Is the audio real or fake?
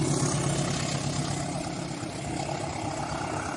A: real